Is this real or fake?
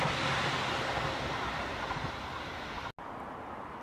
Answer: real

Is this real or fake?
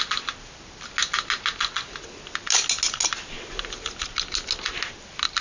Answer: real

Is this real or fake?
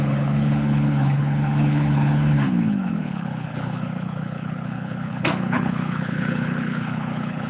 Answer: fake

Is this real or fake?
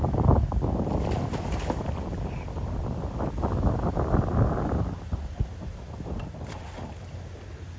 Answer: real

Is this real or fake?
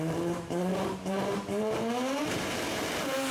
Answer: fake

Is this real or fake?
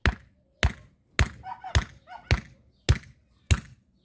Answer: real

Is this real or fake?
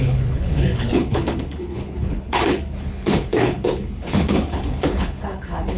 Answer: fake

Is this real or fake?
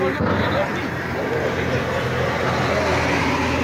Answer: real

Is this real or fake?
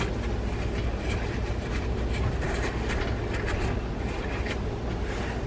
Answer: real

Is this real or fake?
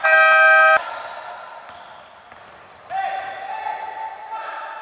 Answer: real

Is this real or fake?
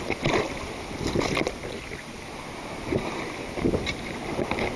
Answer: real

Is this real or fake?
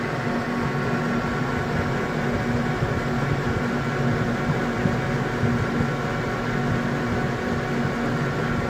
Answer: real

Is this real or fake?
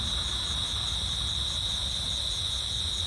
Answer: real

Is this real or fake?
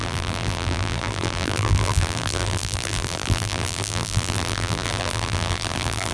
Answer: fake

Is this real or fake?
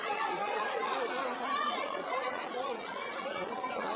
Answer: fake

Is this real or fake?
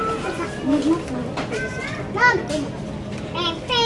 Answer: real